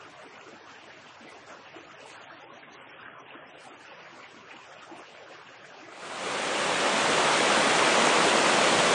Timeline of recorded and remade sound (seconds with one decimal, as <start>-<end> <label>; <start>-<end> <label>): 0.0-8.9 recorded